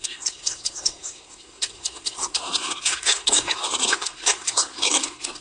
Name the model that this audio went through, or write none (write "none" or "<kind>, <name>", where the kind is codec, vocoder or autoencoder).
codec, SNAC